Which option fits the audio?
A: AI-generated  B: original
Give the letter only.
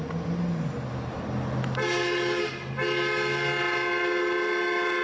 B